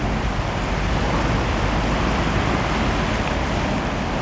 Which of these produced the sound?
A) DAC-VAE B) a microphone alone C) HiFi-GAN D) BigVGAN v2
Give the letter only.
B